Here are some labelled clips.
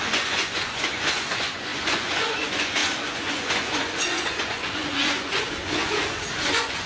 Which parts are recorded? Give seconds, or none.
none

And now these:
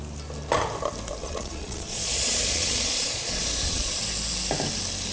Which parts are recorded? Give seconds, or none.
0.0-1.2; 4.0-5.1

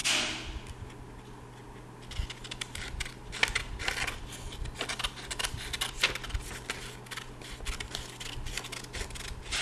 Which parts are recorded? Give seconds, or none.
0.0-9.6

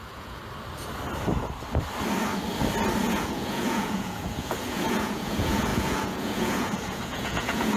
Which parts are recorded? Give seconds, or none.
0.4-3.0

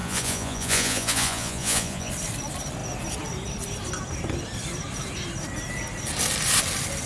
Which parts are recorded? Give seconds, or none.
2.1-7.1